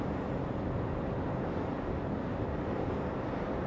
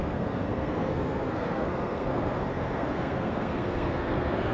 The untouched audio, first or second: first